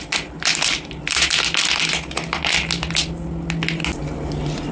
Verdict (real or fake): real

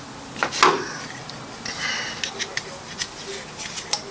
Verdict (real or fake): real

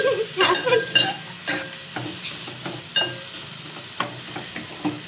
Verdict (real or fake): fake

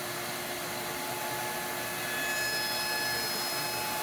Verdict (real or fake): real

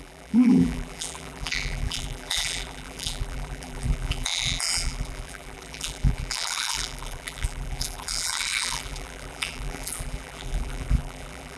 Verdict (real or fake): fake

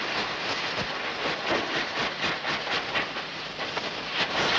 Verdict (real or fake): real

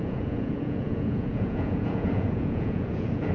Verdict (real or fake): fake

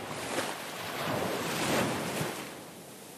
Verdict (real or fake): fake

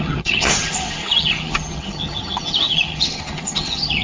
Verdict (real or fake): fake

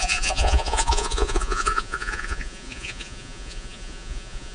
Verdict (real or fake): fake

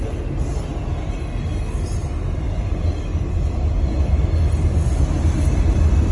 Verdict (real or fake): real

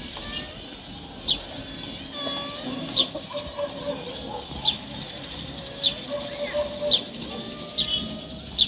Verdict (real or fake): real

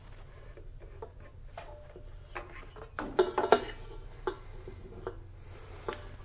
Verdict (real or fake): real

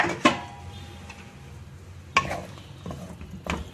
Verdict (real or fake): real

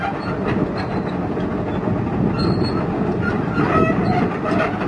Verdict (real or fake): real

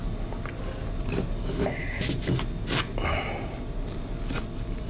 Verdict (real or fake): real